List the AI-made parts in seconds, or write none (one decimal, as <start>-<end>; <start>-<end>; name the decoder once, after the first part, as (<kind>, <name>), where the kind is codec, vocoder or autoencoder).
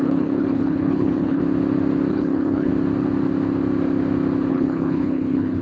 0.0-1.4 (codec, HILCodec); 2.1-2.7; 4.5-5.6